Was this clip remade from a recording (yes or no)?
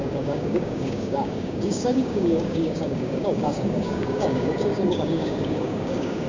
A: yes